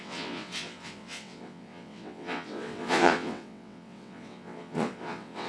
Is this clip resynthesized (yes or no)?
yes